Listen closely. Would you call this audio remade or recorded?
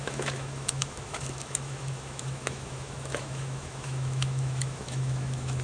remade